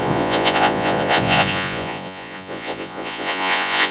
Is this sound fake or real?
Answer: fake